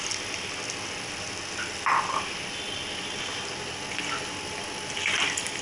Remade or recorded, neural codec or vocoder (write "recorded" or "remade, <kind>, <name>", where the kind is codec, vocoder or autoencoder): recorded